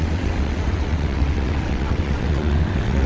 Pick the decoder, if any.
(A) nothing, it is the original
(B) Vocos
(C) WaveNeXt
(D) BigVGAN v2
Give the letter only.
C